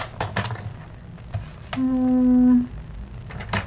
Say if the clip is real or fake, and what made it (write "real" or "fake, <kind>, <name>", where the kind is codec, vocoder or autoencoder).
real